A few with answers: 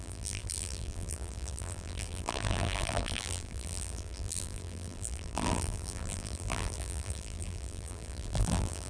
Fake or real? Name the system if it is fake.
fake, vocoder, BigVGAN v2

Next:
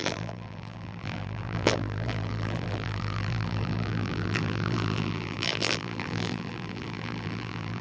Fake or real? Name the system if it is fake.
fake, vocoder, BigVGAN v2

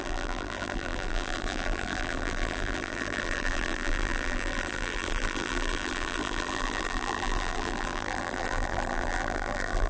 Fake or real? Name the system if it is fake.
fake, vocoder, BigVGAN v2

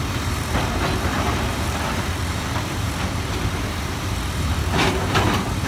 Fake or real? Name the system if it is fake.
fake, vocoder, BigVGAN v2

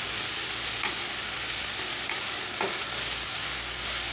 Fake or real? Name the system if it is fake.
real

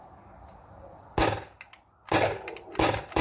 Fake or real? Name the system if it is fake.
real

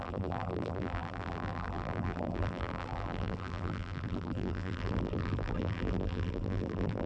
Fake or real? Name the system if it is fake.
fake, vocoder, BigVGAN v2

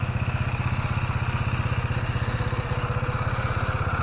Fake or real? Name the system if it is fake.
real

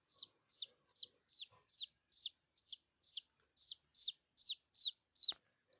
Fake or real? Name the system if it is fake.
fake, vocoder, BigVGAN v2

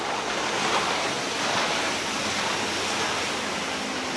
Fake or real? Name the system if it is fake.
real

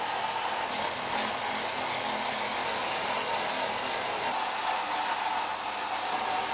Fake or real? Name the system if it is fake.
real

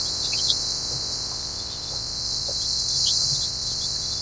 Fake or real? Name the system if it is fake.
real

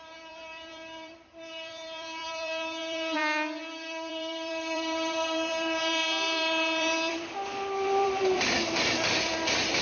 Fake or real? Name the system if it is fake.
fake, vocoder, BigVGAN v2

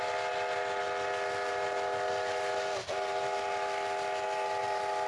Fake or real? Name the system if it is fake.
real